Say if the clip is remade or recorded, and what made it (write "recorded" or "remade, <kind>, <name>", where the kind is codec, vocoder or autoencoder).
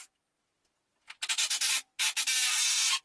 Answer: recorded